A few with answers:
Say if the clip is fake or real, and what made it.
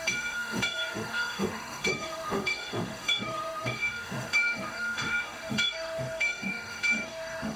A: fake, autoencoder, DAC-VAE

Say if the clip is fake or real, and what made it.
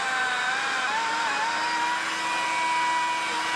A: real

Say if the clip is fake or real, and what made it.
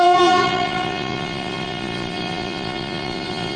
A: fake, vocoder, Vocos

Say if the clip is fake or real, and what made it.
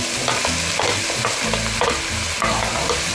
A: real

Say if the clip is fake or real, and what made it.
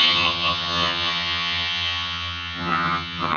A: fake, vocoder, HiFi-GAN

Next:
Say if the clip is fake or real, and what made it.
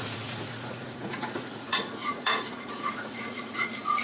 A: fake, vocoder, Vocos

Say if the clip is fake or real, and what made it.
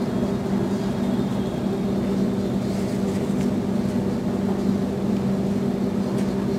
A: real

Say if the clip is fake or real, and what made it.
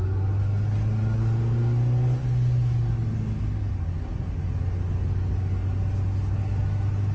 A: real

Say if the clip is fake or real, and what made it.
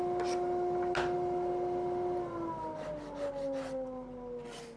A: real